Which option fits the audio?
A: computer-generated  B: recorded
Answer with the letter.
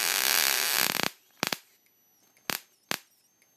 B